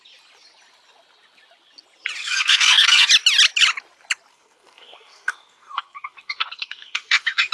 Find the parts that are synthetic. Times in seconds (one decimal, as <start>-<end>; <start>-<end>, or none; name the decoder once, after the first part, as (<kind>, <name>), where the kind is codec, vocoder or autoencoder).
2.2-3.1 (codec, SNAC); 4.3-7.5